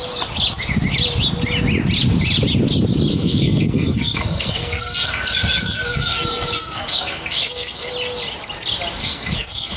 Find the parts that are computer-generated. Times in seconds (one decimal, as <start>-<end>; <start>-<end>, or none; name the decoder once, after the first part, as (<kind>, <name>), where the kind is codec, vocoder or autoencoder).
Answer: 3.1-7.9 (codec, SNAC); 9.0-9.8